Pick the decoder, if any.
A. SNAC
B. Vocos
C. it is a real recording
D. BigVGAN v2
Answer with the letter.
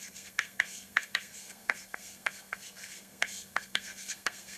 A